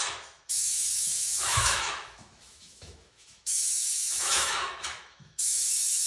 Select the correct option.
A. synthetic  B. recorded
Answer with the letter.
A